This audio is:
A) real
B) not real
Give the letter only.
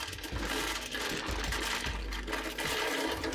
A